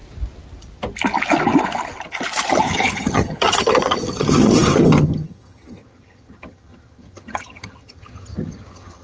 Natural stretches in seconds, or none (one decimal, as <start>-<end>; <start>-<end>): 0.0-2.5